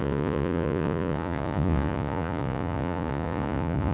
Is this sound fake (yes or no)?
yes